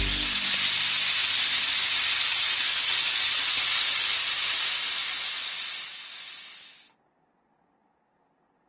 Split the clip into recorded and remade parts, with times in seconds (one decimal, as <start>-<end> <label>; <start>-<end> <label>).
0.0-8.7 recorded

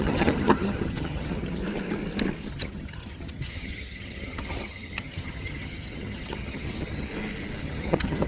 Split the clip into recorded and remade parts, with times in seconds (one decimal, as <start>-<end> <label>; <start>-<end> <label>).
0.0-1.6 remade; 1.6-2.5 recorded; 2.5-7.1 remade; 7.1-7.6 recorded; 7.6-8.3 remade

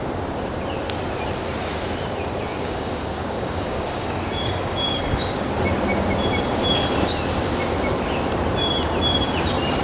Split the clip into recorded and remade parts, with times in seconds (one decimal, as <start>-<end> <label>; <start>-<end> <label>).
0.0-2.5 recorded; 2.5-5.0 remade; 5.0-9.8 recorded

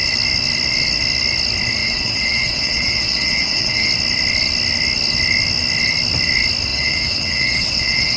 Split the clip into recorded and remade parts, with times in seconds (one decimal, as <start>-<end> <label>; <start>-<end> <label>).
0.0-1.8 recorded; 1.8-3.9 remade; 3.9-6.7 recorded; 6.7-8.2 remade

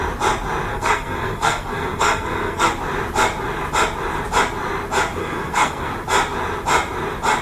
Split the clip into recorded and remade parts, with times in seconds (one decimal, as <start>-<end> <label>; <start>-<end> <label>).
0.0-0.7 recorded; 0.7-2.7 remade; 2.7-5.2 recorded; 5.2-5.9 remade; 5.9-7.4 recorded

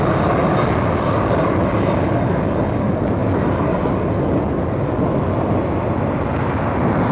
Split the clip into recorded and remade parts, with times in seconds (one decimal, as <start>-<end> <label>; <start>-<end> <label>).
0.0-7.1 recorded

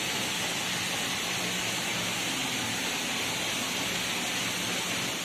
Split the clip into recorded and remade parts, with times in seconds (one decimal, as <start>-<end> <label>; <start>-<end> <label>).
0.0-5.2 recorded

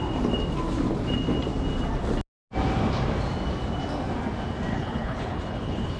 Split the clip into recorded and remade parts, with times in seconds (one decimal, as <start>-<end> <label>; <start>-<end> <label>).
0.0-4.7 recorded; 4.7-6.0 remade